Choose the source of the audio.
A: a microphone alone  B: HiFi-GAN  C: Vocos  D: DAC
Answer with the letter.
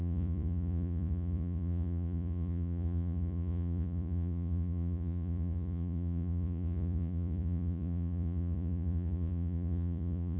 C